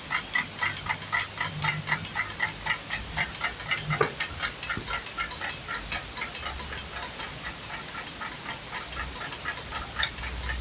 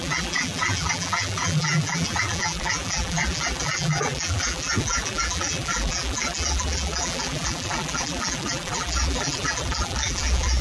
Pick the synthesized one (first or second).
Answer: second